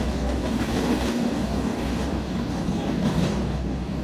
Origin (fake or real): fake